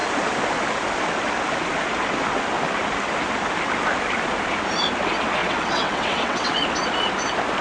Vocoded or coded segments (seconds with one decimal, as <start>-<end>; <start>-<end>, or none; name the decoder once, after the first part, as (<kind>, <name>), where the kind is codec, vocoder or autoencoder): 5.4-6.6 (vocoder, WaveNeXt)